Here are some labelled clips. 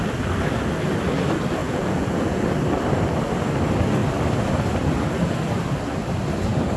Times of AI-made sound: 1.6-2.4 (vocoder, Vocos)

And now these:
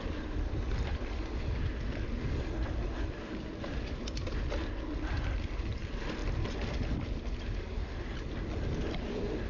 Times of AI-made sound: none

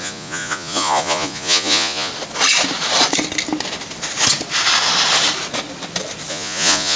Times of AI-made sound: 0.0-2.1 (vocoder, Vocos); 6.3-7.0